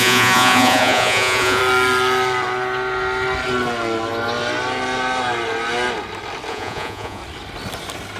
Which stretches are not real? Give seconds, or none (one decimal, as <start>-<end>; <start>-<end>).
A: 0.0-1.6; 6.5-7.2